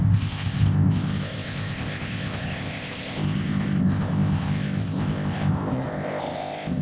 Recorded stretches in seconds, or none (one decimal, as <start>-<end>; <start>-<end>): none